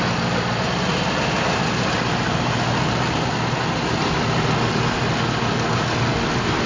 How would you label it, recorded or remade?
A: recorded